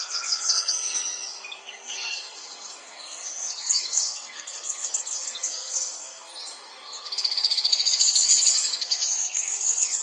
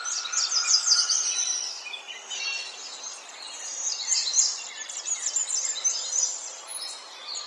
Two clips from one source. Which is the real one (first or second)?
second